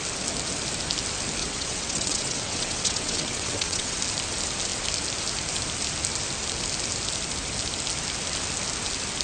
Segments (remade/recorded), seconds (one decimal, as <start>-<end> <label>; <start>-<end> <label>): 0.0-1.4 recorded; 1.4-4.0 remade; 4.0-9.2 recorded